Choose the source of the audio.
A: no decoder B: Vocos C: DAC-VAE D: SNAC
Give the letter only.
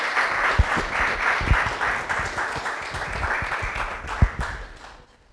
A